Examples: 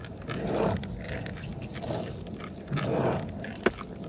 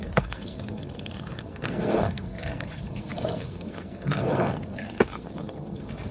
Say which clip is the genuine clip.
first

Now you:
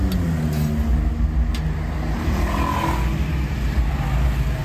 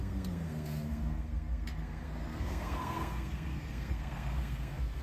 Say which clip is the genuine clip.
first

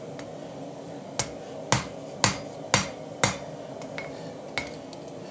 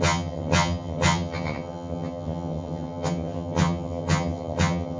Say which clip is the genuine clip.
first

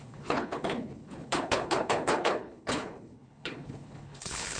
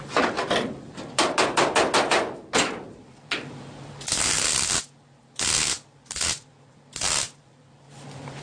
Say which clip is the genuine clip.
second